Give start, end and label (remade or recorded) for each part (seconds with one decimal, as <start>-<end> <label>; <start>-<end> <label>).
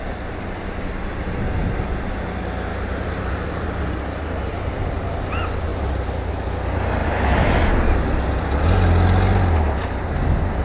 0.0-2.7 recorded; 2.7-3.5 remade; 3.5-5.7 recorded; 5.7-6.3 remade; 6.3-10.6 recorded